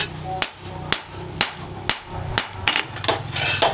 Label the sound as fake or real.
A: real